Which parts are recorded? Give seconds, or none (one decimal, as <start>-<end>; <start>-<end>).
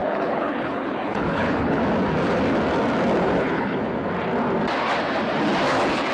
1.8-3.2; 3.8-6.1